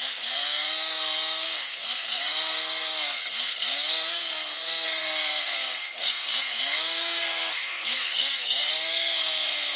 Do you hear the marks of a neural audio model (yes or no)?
yes